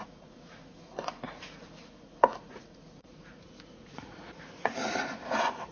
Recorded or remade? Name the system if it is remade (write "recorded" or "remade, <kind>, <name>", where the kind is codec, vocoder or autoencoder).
remade, vocoder, Vocos